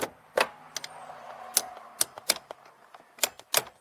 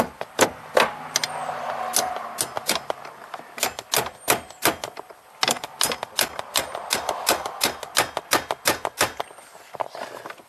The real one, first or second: second